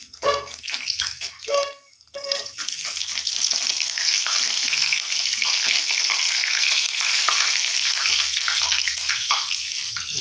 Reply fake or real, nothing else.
fake